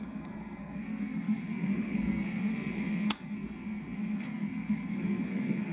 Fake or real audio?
fake